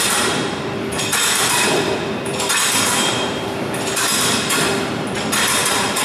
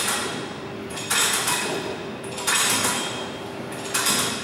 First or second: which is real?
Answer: second